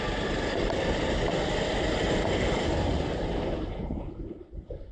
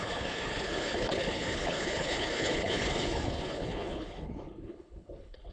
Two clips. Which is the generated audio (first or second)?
second